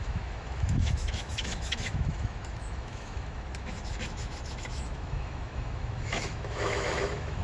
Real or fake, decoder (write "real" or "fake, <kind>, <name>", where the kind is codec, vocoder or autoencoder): fake, autoencoder, DAC-VAE